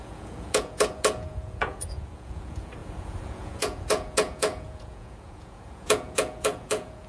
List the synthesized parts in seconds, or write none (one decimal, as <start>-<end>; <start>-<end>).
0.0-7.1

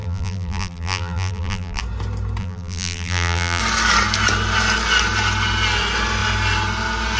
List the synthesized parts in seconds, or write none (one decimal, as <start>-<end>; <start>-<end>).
0.0-1.8; 2.4-3.6

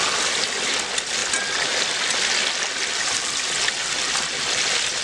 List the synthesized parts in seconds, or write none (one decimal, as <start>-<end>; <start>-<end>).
none

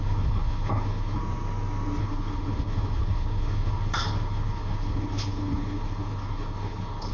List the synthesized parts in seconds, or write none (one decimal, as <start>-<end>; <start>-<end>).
0.0-1.2; 2.0-7.1

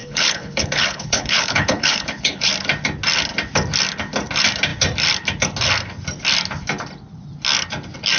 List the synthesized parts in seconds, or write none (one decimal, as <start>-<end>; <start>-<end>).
0.0-2.5

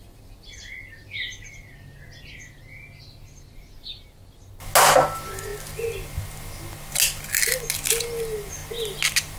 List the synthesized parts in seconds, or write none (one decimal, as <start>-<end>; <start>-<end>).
none

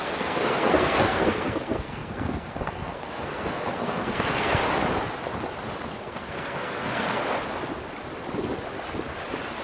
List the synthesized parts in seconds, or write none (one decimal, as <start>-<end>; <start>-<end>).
0.0-4.6; 6.0-7.2

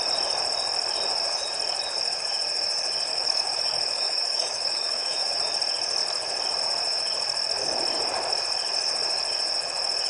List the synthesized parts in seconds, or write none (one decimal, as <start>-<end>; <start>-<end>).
3.1-5.3